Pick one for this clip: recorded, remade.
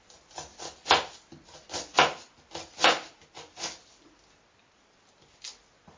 recorded